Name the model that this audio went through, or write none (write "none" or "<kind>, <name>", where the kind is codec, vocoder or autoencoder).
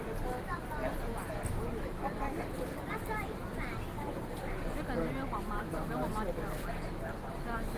none